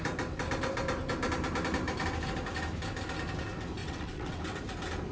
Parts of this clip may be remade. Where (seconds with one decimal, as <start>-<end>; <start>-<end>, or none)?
3.8-4.4